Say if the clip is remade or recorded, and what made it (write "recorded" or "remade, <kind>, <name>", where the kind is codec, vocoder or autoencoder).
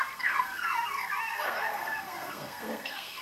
remade, codec, SNAC